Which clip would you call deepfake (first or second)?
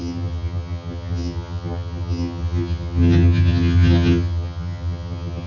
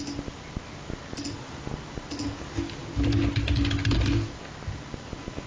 first